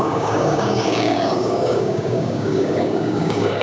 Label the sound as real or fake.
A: fake